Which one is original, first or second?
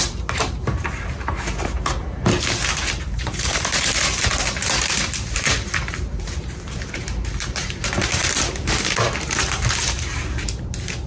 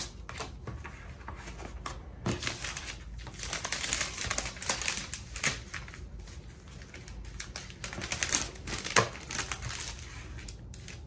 second